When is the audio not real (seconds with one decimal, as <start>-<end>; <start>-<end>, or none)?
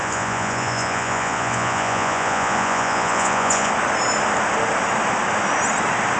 0.0-3.7